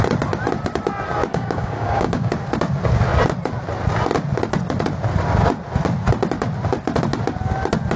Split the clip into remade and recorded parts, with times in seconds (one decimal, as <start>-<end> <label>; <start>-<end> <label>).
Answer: 0.0-1.3 recorded; 1.3-2.3 remade; 2.3-8.0 recorded